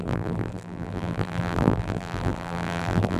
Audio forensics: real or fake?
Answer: fake